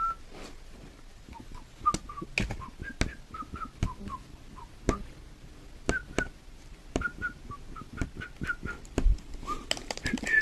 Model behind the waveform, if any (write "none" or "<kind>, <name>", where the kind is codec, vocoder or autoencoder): none